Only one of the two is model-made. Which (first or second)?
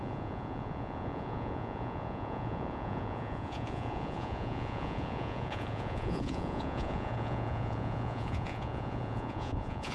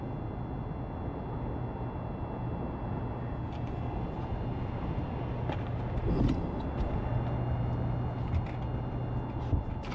first